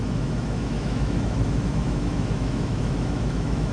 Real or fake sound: fake